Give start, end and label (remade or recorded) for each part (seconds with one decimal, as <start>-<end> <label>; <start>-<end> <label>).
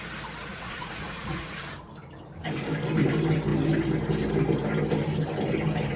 0.0-0.5 recorded; 0.5-1.6 remade; 1.6-6.0 recorded